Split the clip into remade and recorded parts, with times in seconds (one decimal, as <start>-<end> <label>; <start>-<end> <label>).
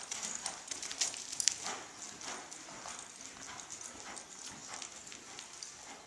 0.0-6.1 recorded